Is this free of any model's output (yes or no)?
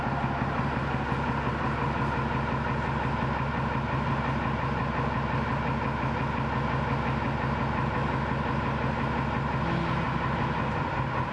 yes